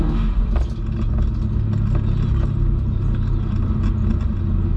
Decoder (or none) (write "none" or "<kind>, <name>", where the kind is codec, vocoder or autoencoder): none